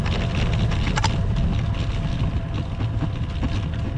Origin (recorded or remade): recorded